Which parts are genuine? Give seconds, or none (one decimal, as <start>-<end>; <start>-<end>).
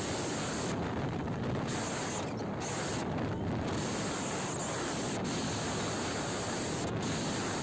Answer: 0.0-7.6